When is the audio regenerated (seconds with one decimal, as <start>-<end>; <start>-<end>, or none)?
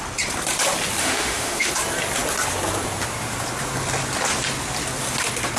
1.0-1.7